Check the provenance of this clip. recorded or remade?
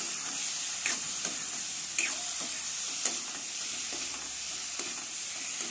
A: recorded